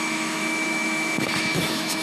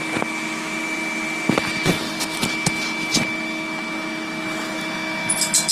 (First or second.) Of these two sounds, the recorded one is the second